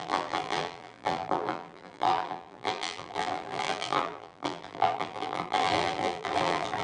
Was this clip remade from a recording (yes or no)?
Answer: yes